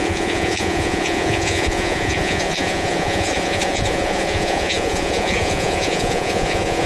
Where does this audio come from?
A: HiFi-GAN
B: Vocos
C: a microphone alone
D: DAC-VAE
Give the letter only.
B